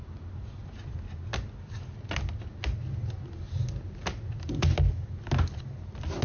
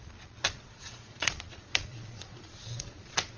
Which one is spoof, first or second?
second